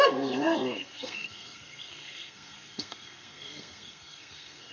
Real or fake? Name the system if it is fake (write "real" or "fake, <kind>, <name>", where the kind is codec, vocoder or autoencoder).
fake, codec, SNAC